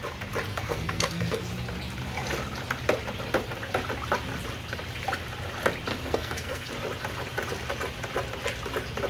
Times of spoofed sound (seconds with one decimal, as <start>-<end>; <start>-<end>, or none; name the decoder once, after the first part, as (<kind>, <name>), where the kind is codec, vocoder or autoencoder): 0.5-1.5 (codec, SNAC); 5.9-6.7